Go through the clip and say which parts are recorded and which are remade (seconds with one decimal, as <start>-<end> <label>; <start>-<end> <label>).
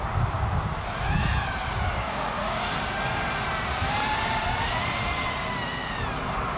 0.0-1.7 recorded; 1.7-2.6 remade; 2.6-6.6 recorded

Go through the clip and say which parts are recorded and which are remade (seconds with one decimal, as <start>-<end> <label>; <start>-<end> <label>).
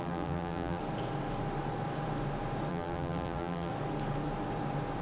0.0-0.8 remade; 0.8-2.7 recorded; 2.7-3.7 remade; 3.7-5.0 recorded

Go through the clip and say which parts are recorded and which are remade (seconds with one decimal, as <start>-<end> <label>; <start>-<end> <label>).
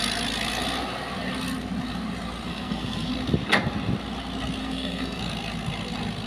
0.0-2.5 recorded; 2.5-3.1 remade; 3.1-4.6 recorded; 4.6-5.2 remade; 5.2-6.3 recorded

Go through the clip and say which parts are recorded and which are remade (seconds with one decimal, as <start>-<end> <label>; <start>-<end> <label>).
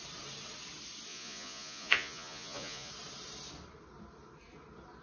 0.0-1.1 recorded; 1.1-2.9 remade; 2.9-5.0 recorded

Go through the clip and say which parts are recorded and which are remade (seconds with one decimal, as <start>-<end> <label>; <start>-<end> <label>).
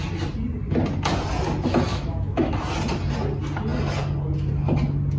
0.0-1.9 recorded; 1.9-2.5 remade; 2.5-5.2 recorded